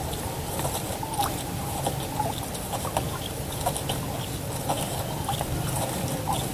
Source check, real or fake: real